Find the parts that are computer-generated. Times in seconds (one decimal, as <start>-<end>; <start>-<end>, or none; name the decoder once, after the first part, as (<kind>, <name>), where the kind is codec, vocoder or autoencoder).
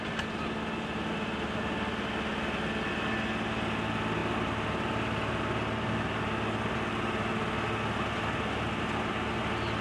none